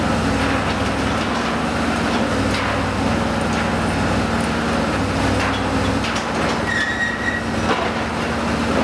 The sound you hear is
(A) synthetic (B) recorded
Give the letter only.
B